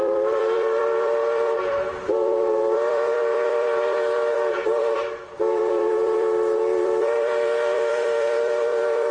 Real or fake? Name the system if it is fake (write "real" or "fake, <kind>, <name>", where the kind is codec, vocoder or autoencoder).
fake, vocoder, BigVGAN v2